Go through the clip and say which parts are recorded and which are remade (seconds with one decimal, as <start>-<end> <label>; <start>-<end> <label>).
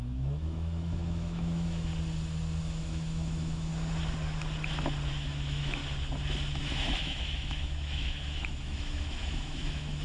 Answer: 0.0-1.9 remade; 1.9-2.6 recorded; 2.6-3.7 remade; 3.7-5.1 recorded; 5.1-5.8 remade; 5.8-6.6 recorded; 6.6-10.0 remade